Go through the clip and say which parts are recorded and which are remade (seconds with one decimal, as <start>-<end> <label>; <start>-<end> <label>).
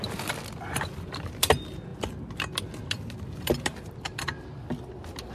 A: 0.0-5.3 recorded